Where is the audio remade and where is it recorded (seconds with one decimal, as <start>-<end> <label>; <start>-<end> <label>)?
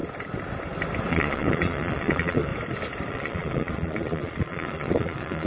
0.0-1.1 recorded; 1.1-2.5 remade; 2.5-3.1 recorded; 3.1-5.5 remade